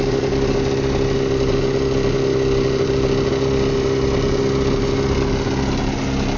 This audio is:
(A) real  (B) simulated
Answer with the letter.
A